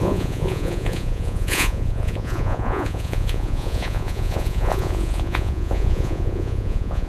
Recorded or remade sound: remade